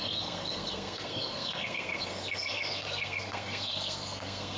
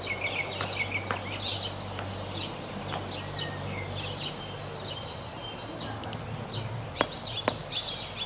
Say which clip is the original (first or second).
second